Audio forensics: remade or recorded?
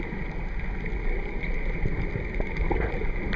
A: recorded